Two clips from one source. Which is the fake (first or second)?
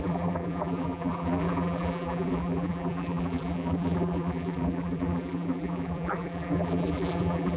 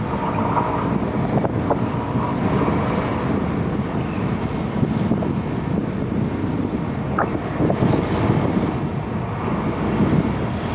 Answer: first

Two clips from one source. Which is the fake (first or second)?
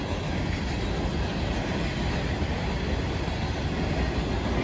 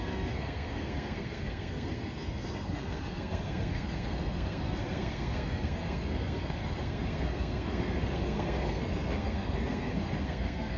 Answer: second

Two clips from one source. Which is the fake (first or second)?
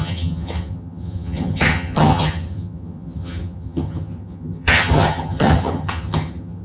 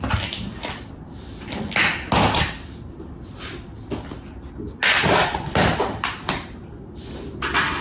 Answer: first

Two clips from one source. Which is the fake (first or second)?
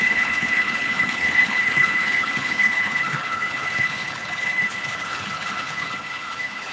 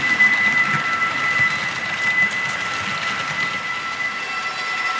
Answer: first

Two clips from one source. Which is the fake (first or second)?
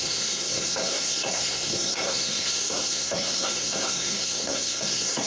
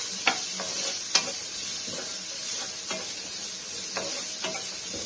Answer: first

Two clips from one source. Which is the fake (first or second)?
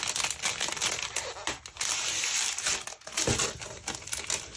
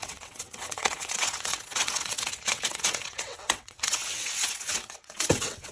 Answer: second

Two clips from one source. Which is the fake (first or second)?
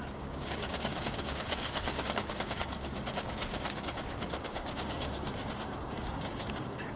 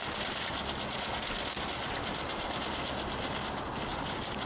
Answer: first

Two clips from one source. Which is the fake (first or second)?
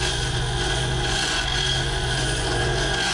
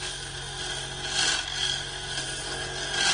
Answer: first